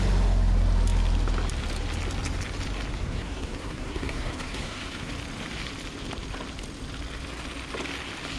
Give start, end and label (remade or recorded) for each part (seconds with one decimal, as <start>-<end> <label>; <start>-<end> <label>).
0.0-3.0 recorded; 3.0-5.1 remade; 5.1-8.4 recorded